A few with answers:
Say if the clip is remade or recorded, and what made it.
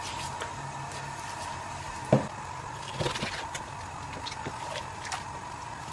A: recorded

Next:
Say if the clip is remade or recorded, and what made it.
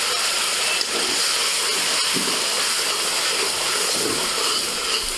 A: recorded